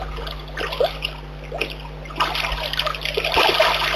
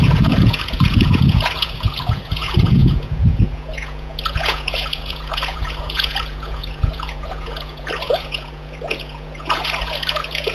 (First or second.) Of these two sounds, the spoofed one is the second